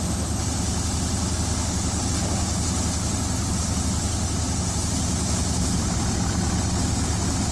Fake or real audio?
real